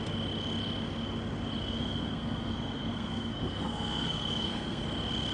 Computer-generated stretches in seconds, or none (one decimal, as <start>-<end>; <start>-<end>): 1.6-4.8